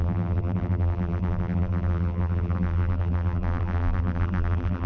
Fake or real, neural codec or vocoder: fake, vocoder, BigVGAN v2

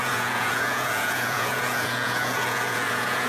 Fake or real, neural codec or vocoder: fake, vocoder, Vocos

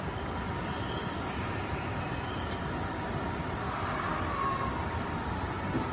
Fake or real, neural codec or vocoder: real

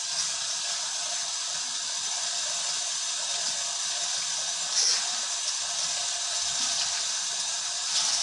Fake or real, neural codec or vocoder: real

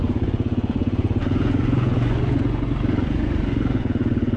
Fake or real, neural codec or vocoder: fake, vocoder, Vocos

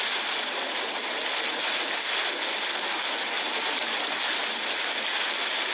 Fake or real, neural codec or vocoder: real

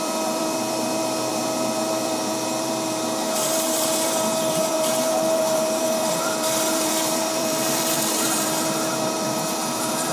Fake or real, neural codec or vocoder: fake, vocoder, BigVGAN v2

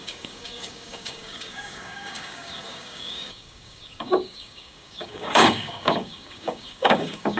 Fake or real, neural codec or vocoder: fake, codec, DAC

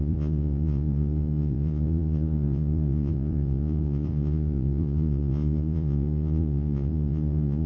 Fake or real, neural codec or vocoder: fake, vocoder, Vocos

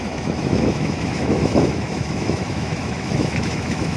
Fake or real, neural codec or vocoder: fake, autoencoder, DAC-VAE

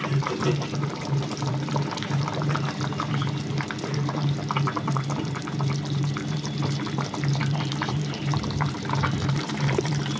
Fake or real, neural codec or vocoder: fake, vocoder, BigVGAN v2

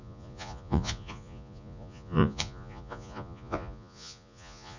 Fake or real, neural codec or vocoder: fake, vocoder, Vocos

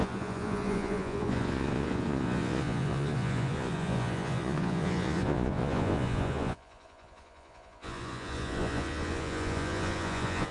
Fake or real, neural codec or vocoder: fake, vocoder, Vocos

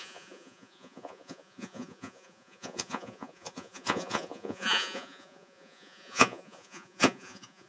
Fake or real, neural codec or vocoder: fake, vocoder, Vocos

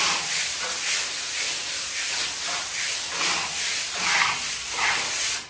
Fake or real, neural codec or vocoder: real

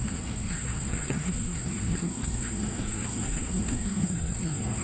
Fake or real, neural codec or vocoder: fake, codec, SNAC